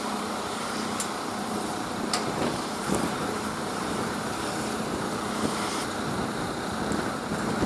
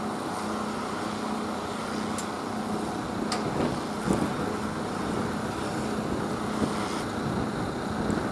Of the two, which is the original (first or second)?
second